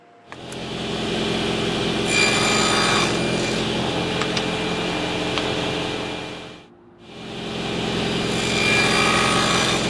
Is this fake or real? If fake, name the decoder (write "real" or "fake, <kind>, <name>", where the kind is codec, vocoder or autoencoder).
real